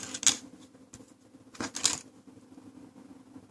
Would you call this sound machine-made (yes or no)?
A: no